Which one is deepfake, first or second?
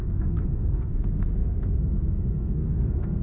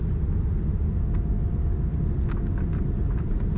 first